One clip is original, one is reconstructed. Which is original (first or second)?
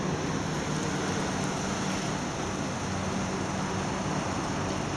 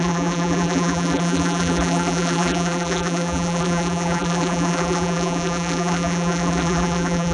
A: first